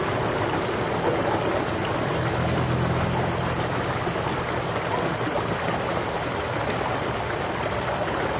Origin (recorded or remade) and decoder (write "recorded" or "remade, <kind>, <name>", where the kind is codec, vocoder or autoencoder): recorded